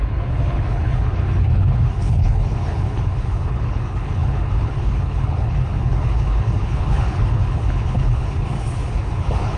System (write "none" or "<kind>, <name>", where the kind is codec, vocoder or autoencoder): codec, HILCodec